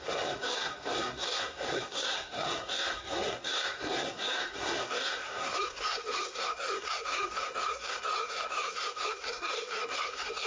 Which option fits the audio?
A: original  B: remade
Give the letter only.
B